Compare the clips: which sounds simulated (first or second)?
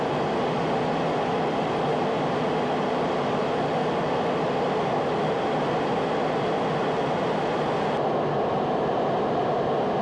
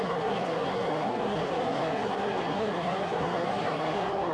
second